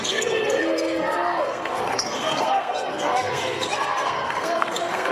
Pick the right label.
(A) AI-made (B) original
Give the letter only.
A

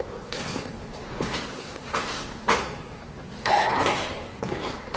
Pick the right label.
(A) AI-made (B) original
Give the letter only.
A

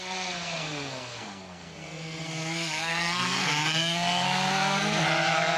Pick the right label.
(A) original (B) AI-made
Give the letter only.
B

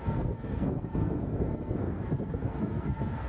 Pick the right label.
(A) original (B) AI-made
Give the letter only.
B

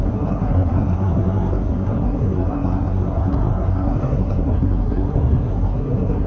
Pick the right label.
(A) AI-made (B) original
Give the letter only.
A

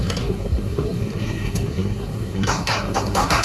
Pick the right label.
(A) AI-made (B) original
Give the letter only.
A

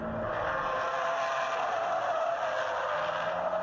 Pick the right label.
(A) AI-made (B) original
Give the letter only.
B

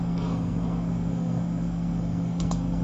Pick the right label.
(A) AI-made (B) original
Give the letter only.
A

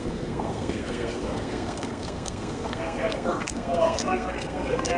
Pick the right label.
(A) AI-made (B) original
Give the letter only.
A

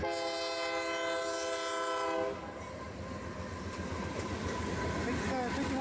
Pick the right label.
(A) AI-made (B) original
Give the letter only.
B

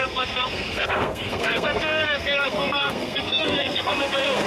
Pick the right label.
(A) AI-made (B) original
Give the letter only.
A